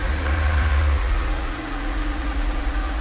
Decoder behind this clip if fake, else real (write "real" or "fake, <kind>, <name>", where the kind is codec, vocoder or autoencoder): fake, vocoder, Vocos